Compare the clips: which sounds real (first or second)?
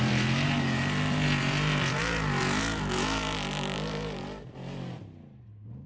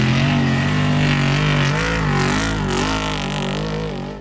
second